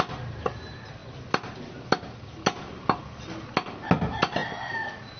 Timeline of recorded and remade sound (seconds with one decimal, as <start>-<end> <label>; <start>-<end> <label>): 0.0-5.2 recorded